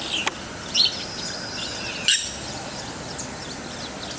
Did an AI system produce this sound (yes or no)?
no